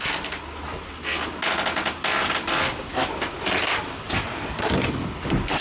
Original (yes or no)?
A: yes